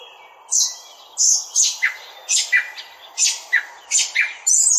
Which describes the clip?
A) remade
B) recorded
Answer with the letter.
B